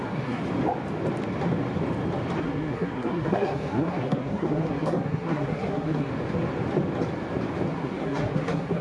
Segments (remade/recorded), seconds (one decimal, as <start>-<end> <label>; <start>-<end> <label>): 0.0-0.4 remade; 0.4-2.4 recorded; 2.4-6.1 remade; 6.1-7.7 recorded; 7.7-8.8 remade